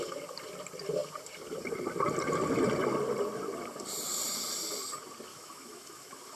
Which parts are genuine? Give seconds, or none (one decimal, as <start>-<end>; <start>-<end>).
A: 0.0-5.3